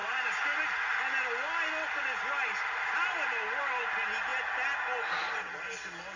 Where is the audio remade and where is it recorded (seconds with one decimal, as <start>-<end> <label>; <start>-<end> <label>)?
0.0-6.2 recorded